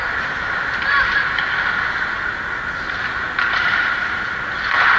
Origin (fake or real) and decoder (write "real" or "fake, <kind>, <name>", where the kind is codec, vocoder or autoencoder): real